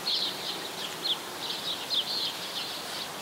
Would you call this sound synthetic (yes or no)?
no